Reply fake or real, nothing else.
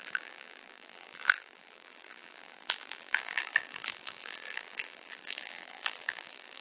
fake